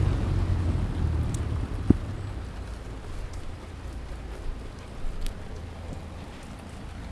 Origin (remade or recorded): recorded